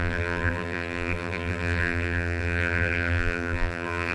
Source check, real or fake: fake